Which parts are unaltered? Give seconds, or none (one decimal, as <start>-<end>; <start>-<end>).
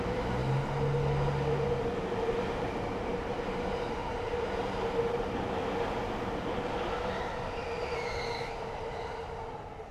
0.0-9.9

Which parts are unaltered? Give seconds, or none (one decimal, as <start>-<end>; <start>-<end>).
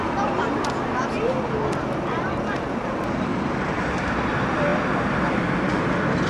0.0-6.3